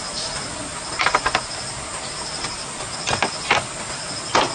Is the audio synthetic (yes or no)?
no